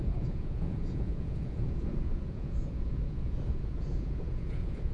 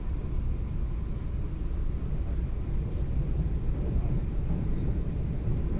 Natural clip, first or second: second